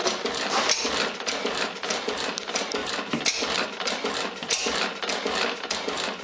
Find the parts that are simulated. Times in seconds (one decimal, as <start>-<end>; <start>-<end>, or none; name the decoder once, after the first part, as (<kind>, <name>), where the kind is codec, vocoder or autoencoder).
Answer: none